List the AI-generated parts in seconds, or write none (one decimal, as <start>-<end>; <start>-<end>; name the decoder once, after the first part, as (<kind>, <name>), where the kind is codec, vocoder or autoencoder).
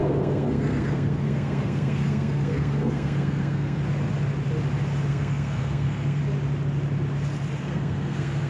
0.0-3.8 (codec, SNAC); 5.1-6.2; 7.6-8.5